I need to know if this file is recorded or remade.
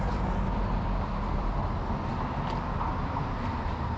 recorded